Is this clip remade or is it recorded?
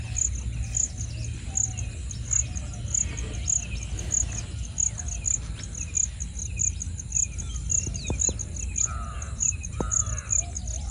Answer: recorded